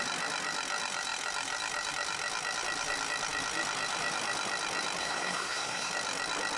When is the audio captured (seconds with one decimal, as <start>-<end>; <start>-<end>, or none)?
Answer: 0.0-5.0; 5.9-6.6